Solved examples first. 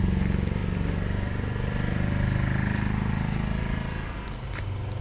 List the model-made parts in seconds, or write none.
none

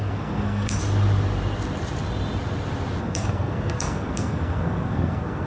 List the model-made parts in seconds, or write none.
0.0-0.8 (codec, SNAC); 3.0-5.5

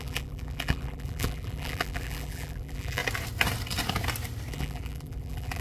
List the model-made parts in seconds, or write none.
0.0-3.0 (vocoder, BigVGAN v2); 4.5-5.6

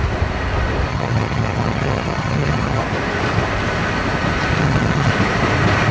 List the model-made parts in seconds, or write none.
0.9-2.8 (vocoder, HiFi-GAN); 4.6-5.1

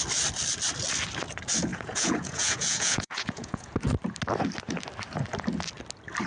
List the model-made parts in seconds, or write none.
1.7-3.7 (vocoder, Vocos)

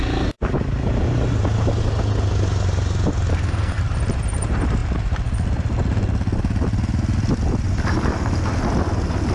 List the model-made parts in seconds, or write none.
3.3-3.8 (codec, SNAC)

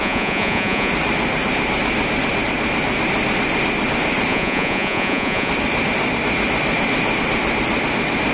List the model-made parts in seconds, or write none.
0.0-0.9 (vocoder, Vocos); 4.3-5.5

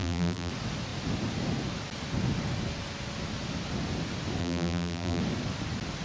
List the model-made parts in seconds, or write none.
0.0-0.5 (vocoder, BigVGAN v2); 4.4-5.2